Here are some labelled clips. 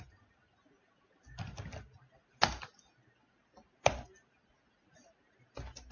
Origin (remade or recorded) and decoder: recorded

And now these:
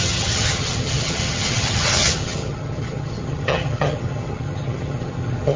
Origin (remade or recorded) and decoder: remade, vocoder, HiFi-GAN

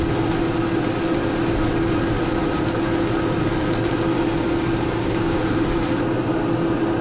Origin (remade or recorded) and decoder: recorded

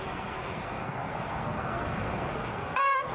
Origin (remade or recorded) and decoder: remade, codec, SNAC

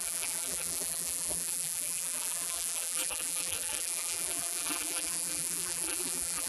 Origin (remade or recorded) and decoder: remade, vocoder, BigVGAN v2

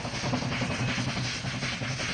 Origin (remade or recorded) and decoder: recorded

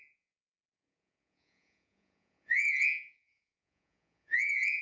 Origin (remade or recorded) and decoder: remade, vocoder, Vocos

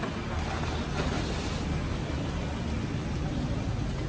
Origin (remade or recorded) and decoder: recorded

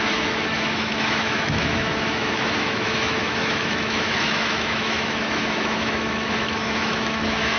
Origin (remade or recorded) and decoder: remade, autoencoder, DAC-VAE